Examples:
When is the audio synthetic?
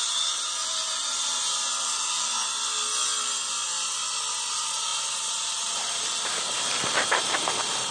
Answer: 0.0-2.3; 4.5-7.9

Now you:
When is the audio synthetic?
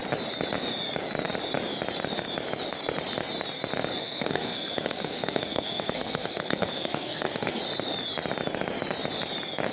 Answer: 4.0-7.6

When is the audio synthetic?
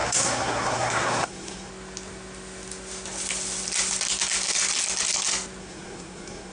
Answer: 0.0-1.7; 5.6-6.5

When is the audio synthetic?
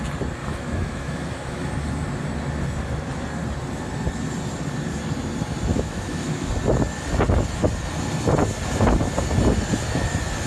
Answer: 0.4-1.7; 5.7-6.5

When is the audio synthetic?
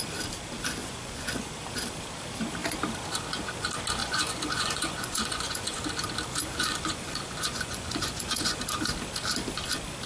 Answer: 0.8-1.5; 4.0-5.8; 6.3-8.6